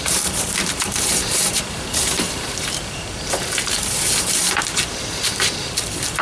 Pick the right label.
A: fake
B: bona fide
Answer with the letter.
A